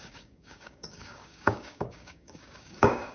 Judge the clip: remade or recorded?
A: remade